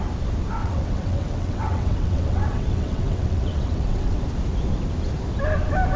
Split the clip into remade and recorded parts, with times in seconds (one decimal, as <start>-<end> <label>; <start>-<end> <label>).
0.0-0.6 recorded; 0.6-4.2 remade; 4.2-6.0 recorded